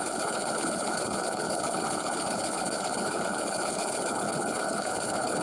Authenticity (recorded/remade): remade